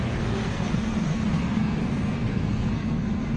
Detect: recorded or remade remade